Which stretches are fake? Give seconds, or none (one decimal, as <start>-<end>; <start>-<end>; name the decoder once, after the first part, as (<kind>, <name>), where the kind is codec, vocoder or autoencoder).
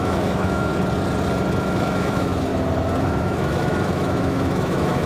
0.0-0.7 (autoencoder, DAC-VAE); 1.6-2.5; 3.0-5.1